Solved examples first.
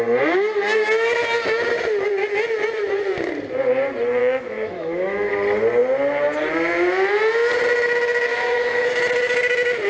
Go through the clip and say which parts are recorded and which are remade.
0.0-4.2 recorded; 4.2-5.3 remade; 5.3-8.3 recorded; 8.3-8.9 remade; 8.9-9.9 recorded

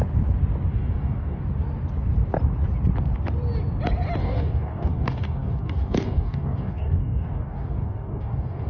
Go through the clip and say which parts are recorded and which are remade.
0.0-0.7 recorded; 0.7-1.4 remade; 1.4-4.2 recorded; 4.2-8.7 remade